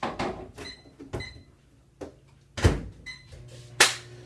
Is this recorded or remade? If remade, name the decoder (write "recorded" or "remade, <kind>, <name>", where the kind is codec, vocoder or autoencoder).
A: recorded